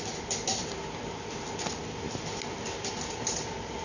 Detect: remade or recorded recorded